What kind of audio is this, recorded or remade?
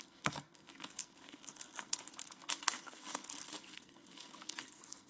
remade